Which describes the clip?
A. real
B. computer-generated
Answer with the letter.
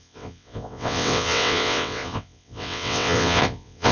B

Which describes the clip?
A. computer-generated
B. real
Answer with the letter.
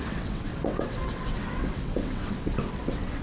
A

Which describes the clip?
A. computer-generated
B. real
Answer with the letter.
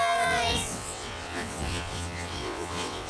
A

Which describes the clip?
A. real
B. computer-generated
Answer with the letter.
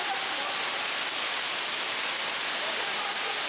A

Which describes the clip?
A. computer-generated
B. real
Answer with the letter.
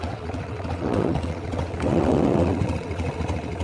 A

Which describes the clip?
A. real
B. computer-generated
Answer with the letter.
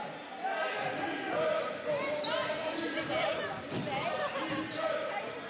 A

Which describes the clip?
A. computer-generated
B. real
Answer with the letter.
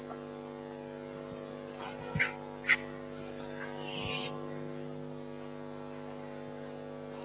B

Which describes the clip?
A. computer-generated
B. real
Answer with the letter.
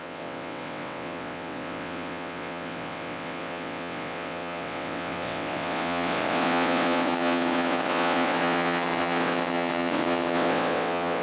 A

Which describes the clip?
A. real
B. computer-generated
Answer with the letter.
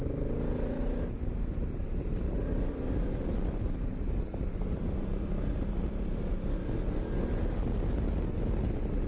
A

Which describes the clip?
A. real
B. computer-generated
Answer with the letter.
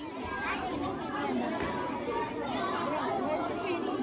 A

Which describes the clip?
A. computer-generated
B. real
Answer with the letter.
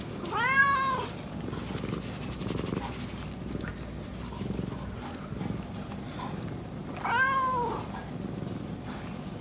B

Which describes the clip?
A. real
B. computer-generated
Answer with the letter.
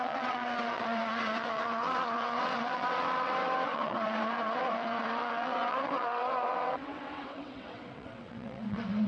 B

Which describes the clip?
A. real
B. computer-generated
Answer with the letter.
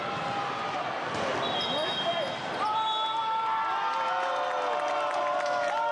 A